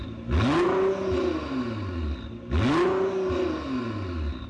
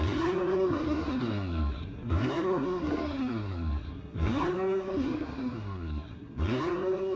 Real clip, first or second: first